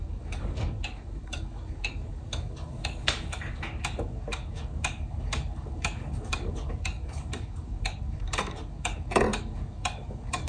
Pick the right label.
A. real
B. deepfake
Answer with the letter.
B